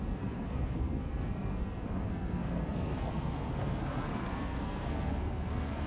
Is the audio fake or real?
fake